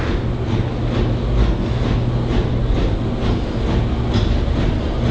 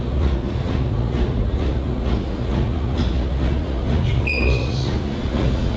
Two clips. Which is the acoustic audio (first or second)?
first